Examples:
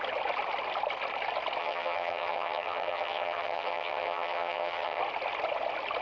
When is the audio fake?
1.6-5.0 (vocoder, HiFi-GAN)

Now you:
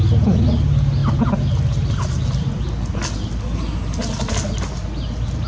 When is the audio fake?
none

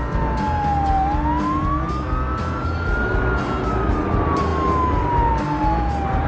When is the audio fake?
none

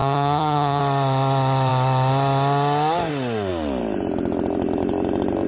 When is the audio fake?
0.0-0.8 (vocoder, HiFi-GAN)

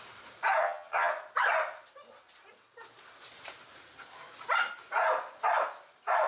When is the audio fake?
0.6-1.1 (vocoder, HiFi-GAN)